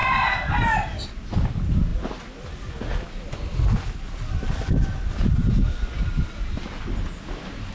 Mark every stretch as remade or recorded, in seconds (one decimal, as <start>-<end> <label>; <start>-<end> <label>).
0.0-7.7 recorded

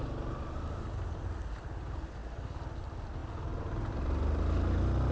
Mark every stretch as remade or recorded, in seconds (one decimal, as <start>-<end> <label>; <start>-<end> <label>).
0.0-5.1 recorded

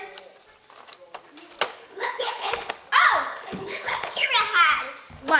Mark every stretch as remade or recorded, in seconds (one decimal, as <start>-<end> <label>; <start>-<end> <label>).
0.0-1.7 recorded; 1.7-2.7 remade; 2.7-3.3 recorded; 3.3-4.3 remade; 4.3-5.4 recorded

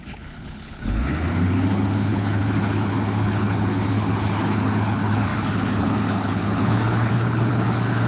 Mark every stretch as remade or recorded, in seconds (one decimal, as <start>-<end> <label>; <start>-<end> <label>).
0.0-8.1 remade

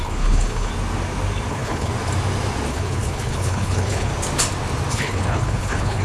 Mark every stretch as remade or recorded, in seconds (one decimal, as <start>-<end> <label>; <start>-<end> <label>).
0.0-0.7 remade; 0.7-1.5 recorded; 1.5-1.9 remade; 1.9-2.7 recorded; 2.7-4.1 remade; 4.1-4.9 recorded; 4.9-6.0 remade

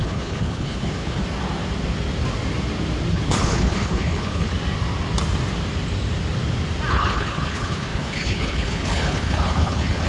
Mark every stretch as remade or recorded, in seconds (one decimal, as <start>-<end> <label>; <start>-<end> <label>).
0.0-1.2 remade; 1.2-3.1 recorded; 3.1-4.5 remade; 4.5-6.9 recorded; 6.9-10.1 remade

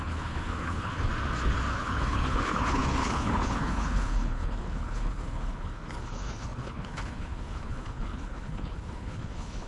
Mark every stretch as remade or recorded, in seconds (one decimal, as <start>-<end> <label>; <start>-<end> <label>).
0.0-1.1 remade; 1.1-1.7 recorded; 1.7-9.7 remade

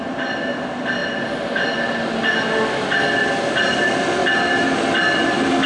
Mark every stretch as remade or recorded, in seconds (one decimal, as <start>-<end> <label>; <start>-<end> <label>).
0.0-5.7 recorded